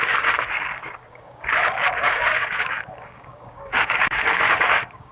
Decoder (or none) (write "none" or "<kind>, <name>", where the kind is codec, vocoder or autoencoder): codec, DAC